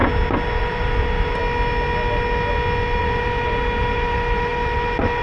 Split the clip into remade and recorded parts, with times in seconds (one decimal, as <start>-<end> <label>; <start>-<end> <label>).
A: 0.0-0.6 recorded; 0.6-1.4 remade; 1.4-3.0 recorded; 3.0-5.2 remade